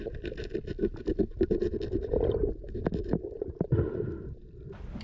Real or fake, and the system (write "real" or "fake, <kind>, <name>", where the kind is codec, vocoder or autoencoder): fake, vocoder, BigVGAN v2